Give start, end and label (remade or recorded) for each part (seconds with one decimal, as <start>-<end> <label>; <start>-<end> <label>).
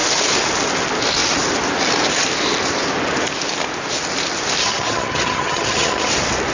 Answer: 0.0-4.6 recorded; 4.6-6.1 remade; 6.1-6.5 recorded